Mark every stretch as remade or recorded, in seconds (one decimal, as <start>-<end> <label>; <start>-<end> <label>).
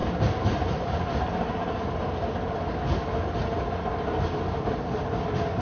0.0-5.6 recorded